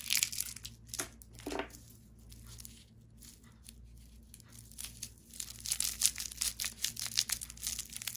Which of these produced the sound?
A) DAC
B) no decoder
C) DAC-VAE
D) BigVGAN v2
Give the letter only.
B